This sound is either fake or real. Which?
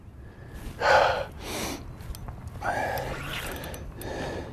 real